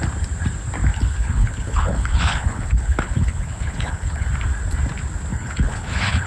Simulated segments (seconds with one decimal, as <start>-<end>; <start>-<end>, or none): 0.9-4.3; 5.3-6.3